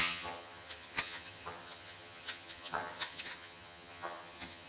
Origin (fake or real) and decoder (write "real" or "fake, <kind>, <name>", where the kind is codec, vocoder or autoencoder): fake, vocoder, HiFi-GAN